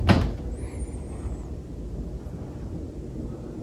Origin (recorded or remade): recorded